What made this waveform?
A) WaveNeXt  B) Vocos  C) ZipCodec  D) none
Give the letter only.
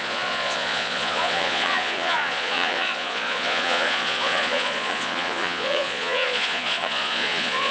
B